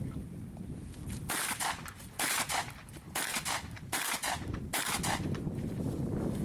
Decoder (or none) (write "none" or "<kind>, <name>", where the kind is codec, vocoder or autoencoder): none